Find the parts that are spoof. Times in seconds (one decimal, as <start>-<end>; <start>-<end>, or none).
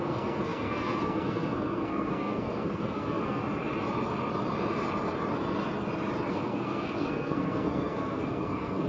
0.0-3.4; 6.3-8.9